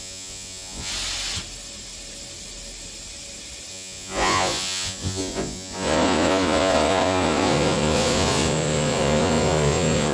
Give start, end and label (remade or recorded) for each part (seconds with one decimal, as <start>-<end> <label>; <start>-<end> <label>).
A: 0.0-0.9 remade; 0.9-3.7 recorded; 3.7-10.1 remade